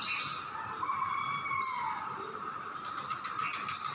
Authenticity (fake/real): real